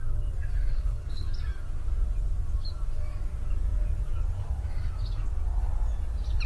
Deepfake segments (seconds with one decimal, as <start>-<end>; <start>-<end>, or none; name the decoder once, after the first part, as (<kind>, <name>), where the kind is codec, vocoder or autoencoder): 0.7-1.3 (codec, HILCodec)